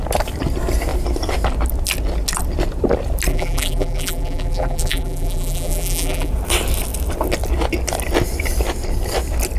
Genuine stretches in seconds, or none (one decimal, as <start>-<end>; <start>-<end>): 0.0-3.3; 6.3-9.6